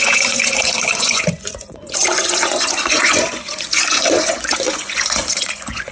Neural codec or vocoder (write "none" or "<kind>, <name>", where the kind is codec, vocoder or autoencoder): vocoder, Vocos